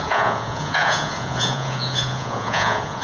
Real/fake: fake